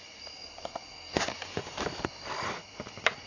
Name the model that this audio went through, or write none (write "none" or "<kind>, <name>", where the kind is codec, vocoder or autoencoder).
none